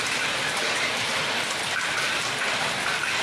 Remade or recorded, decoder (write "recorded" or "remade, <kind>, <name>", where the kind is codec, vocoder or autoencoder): recorded